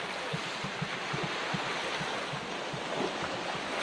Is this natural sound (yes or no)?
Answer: yes